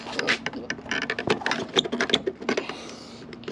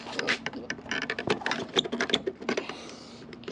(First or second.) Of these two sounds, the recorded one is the first